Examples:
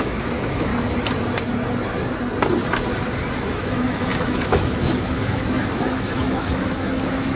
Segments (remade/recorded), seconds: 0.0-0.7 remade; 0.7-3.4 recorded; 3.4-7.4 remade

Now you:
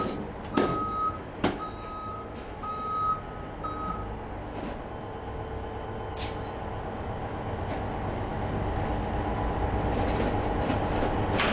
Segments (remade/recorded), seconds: 0.0-0.7 recorded; 0.7-3.1 remade; 3.1-7.2 recorded; 7.2-7.7 remade; 7.7-11.5 recorded